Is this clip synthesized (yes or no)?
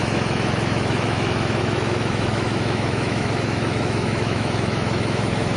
yes